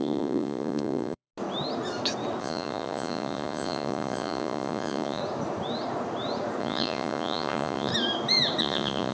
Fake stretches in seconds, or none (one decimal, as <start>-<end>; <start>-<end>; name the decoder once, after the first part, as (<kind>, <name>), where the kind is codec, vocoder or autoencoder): 0.0-1.3 (vocoder, Vocos); 2.4-5.2; 6.6-7.9; 8.6-9.1